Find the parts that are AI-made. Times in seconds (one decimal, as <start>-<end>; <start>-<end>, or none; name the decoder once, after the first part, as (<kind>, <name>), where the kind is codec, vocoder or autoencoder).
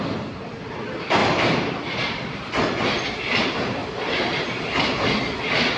1.2-2.5 (vocoder, BigVGAN v2); 3.8-4.6